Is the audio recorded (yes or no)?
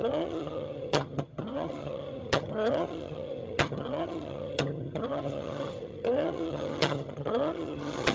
no